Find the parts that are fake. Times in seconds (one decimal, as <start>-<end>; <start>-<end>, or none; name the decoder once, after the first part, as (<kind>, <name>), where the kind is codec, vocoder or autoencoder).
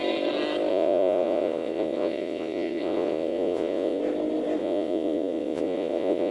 0.7-4.0 (vocoder, Vocos); 4.6-6.3